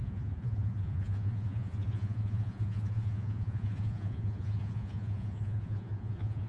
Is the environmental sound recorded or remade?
remade